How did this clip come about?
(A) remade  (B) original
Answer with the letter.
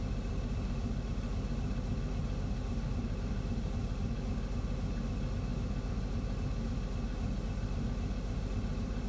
B